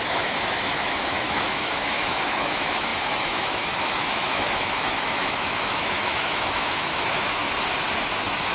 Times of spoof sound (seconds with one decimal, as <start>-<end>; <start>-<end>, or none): 0.0-7.4